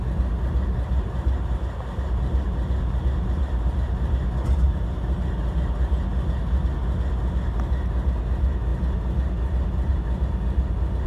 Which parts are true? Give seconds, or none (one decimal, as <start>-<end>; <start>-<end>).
0.0-11.1